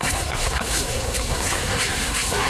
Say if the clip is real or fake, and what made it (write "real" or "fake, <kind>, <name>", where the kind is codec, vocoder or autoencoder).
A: fake, codec, SNAC